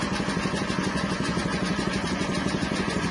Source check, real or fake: fake